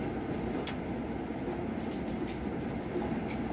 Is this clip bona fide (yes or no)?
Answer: yes